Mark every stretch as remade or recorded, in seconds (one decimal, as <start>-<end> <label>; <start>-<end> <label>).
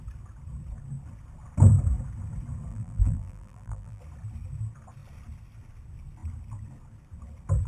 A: 0.0-2.7 recorded; 2.7-4.0 remade; 4.0-7.7 recorded